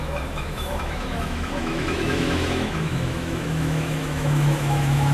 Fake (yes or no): yes